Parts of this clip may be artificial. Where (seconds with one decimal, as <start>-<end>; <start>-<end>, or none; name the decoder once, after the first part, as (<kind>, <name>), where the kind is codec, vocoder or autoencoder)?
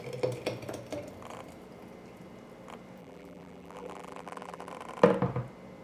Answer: 3.0-4.7 (vocoder, BigVGAN v2)